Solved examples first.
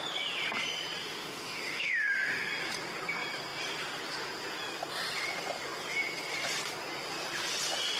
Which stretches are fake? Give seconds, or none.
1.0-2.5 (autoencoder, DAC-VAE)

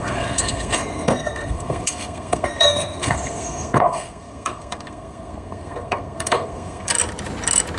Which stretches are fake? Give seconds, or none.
0.0-6.9 (codec, SNAC)

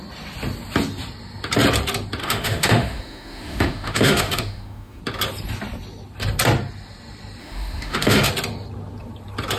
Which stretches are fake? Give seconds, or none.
2.2-5.0 (autoencoder, DAC-VAE); 7.4-8.3

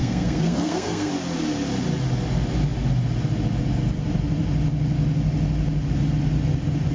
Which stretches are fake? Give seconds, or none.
0.0-1.1 (codec, SNAC)

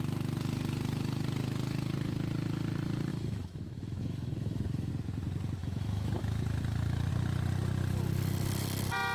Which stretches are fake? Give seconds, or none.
3.1-4.9 (autoencoder, DAC-VAE); 5.6-7.1